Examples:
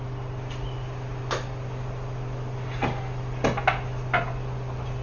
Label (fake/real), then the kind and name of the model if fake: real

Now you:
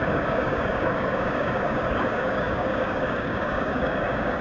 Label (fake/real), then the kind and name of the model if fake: fake, codec, DAC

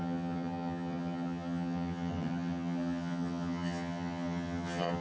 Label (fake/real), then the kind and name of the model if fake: fake, vocoder, HiFi-GAN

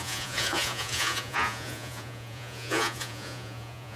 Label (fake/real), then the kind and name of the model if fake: fake, vocoder, Vocos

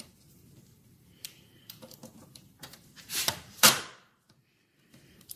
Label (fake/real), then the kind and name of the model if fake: fake, vocoder, BigVGAN v2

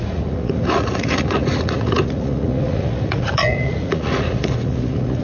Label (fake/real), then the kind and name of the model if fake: fake, vocoder, Vocos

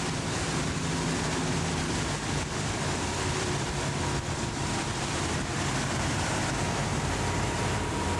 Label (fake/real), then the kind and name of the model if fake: fake, vocoder, BigVGAN v2